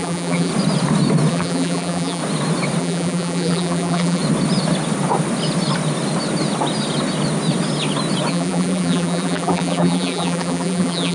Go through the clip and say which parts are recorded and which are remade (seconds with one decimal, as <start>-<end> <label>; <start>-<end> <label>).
0.0-0.5 remade; 0.5-1.3 recorded; 1.3-2.2 remade; 2.2-2.8 recorded; 2.8-4.2 remade; 4.2-8.3 recorded; 8.3-11.1 remade